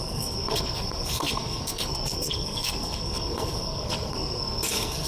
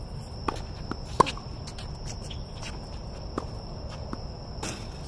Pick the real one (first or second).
second